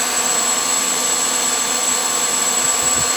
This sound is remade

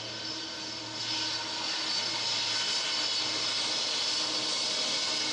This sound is recorded